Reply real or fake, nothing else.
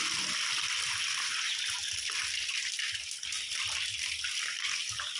real